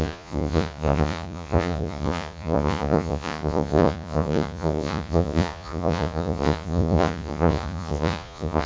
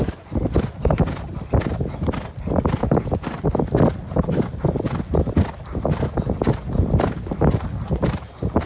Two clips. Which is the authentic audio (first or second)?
second